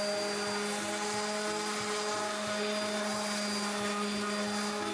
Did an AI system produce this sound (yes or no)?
no